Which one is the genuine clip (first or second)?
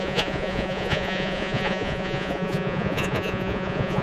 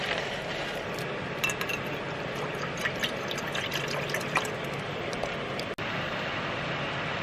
second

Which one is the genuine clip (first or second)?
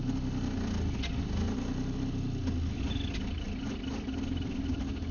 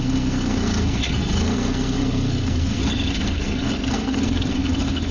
first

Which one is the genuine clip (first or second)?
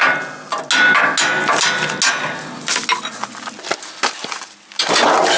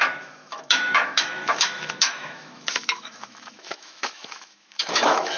first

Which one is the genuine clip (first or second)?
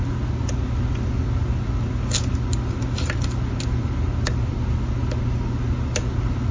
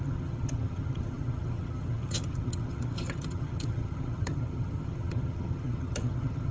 first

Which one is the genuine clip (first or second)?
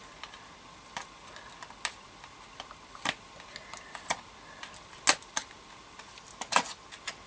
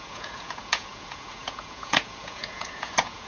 first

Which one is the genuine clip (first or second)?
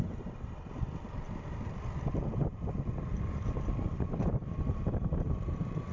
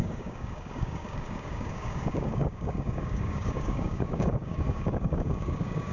first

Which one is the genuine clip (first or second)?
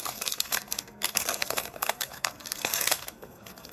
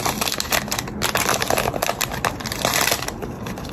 second